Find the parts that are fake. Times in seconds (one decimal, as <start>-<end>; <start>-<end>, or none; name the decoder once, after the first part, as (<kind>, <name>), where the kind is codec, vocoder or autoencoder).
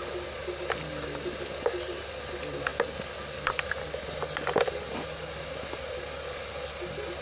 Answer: none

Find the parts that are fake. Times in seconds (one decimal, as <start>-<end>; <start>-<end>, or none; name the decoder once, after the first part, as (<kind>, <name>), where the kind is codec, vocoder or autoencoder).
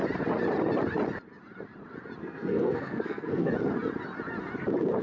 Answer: 2.2-3.5 (codec, SNAC)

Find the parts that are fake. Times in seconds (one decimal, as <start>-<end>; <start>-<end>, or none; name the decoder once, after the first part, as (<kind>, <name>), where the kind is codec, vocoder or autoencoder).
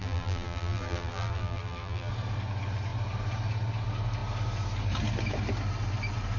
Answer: 0.0-2.1 (vocoder, BigVGAN v2)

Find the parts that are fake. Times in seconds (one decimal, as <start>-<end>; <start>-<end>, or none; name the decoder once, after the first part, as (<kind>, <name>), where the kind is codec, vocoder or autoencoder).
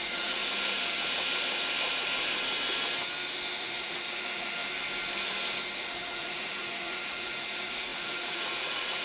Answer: 0.0-0.4 (vocoder, Vocos); 3.6-4.6; 5.8-9.0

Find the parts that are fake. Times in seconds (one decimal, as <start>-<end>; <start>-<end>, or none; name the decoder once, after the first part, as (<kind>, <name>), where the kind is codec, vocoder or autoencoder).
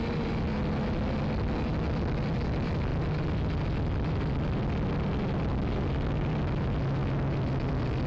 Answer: none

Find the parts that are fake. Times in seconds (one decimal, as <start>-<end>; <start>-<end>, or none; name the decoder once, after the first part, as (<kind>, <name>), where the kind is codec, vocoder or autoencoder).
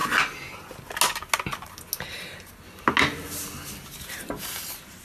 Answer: none